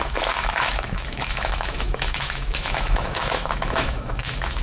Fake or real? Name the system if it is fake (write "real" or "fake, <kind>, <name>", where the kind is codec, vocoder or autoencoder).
fake, autoencoder, DAC-VAE